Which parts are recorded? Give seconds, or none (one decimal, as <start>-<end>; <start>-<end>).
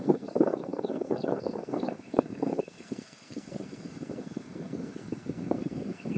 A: none